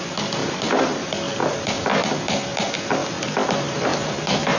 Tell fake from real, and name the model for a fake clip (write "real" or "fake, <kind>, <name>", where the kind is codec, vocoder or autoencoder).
real